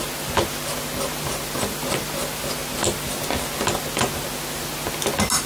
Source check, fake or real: real